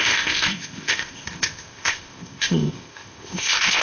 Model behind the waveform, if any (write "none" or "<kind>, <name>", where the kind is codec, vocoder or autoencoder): codec, ZipCodec